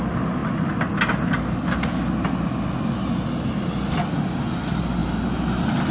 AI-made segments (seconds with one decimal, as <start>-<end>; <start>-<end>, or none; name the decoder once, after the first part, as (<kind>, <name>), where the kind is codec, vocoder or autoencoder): none